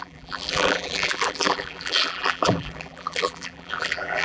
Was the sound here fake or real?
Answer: fake